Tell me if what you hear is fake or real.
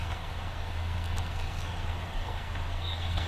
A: fake